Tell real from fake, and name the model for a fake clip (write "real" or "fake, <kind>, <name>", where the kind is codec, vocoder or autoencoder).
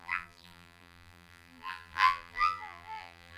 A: fake, vocoder, BigVGAN v2